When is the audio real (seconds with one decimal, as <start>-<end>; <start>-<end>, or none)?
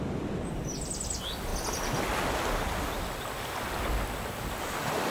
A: 0.0-5.1